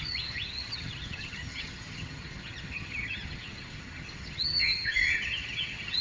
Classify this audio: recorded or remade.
remade